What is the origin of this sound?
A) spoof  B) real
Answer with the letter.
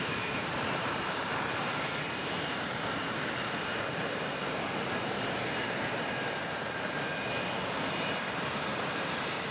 A